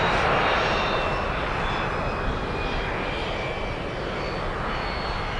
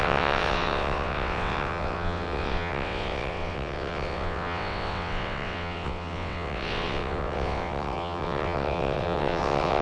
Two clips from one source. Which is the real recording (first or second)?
first